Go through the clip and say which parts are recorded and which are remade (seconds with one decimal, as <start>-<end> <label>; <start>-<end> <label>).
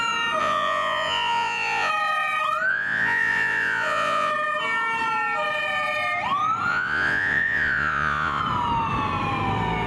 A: 0.0-0.4 recorded; 0.4-1.9 remade; 1.9-2.7 recorded; 2.7-4.3 remade; 4.3-6.7 recorded; 6.7-8.4 remade; 8.4-9.9 recorded